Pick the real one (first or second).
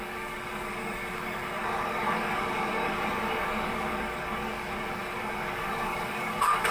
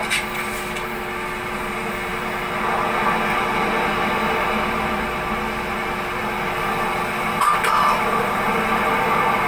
second